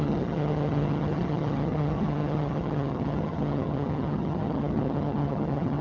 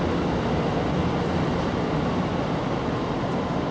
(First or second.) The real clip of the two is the second